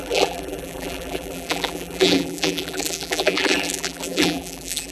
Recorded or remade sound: remade